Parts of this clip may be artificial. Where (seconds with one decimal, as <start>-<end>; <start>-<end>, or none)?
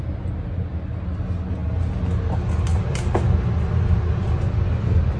none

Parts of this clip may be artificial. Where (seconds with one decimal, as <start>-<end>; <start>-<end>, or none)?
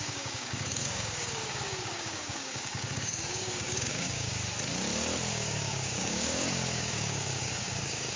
0.0-4.3; 5.3-8.2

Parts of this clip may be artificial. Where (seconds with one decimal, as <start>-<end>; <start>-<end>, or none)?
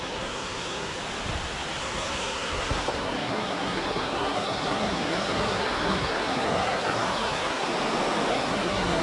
0.0-1.0; 1.8-7.7; 8.3-9.0